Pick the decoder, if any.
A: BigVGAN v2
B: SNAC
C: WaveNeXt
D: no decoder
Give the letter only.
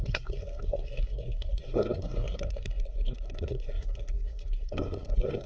B